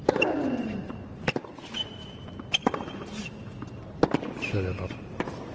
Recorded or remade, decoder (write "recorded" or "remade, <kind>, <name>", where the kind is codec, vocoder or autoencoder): recorded